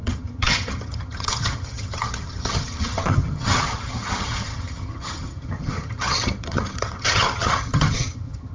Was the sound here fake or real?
fake